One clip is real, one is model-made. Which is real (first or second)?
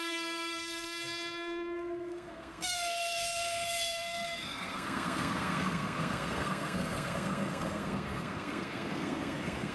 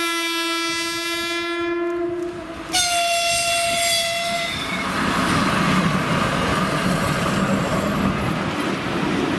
second